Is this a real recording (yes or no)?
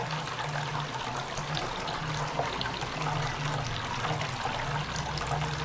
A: yes